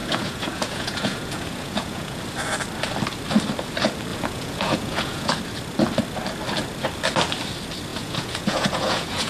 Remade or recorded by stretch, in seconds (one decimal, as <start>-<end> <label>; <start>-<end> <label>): 0.0-2.2 remade; 2.2-4.1 recorded; 4.1-5.3 remade; 5.3-7.9 recorded; 7.9-9.3 remade